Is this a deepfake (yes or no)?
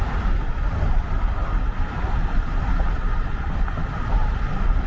no